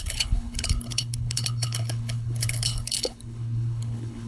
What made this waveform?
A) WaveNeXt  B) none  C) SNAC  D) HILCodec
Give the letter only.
D